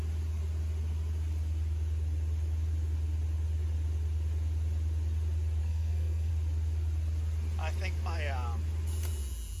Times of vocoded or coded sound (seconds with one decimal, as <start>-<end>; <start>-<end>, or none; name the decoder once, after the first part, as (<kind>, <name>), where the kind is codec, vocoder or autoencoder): 5.6-6.3 (codec, SNAC)